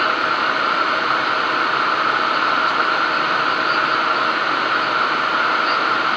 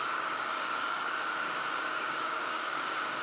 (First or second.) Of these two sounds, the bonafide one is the first